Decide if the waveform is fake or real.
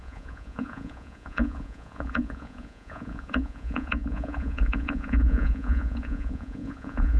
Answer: fake